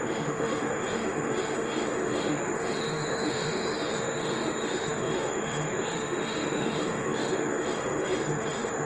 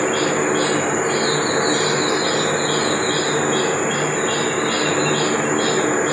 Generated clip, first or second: first